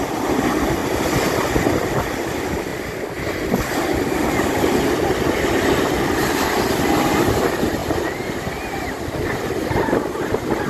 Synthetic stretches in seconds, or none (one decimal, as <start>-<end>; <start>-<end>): none